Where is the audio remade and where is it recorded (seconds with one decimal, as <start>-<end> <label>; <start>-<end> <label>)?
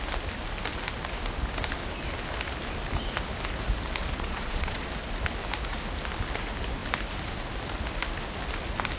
0.0-4.0 recorded; 4.0-4.9 remade; 4.9-9.0 recorded